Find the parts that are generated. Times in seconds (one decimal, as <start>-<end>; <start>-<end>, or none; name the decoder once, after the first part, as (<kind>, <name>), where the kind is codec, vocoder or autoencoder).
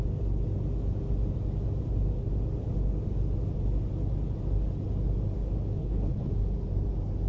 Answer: 5.8-6.3 (codec, HILCodec)